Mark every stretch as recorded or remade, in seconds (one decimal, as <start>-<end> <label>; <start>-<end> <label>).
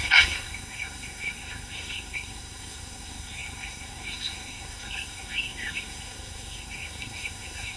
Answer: 0.0-7.8 remade